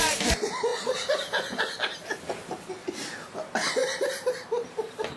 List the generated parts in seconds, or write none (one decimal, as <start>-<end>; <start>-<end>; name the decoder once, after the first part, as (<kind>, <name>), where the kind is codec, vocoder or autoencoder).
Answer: 0.7-2.2 (vocoder, BigVGAN v2); 2.8-3.3; 3.8-5.2